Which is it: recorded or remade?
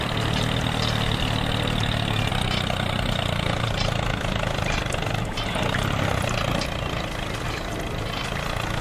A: recorded